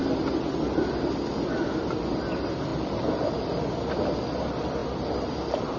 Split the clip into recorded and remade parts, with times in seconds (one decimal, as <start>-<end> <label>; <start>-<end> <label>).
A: 0.0-5.8 recorded